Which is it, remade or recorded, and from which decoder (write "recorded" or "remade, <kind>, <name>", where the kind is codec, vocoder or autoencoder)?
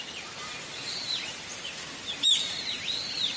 remade, vocoder, BigVGAN v2